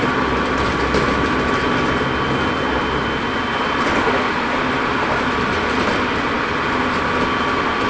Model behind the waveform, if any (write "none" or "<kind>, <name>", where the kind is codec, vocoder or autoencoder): none